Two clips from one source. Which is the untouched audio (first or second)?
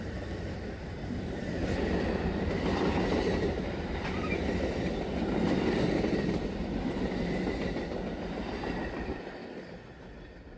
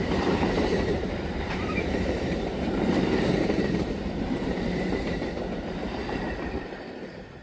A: first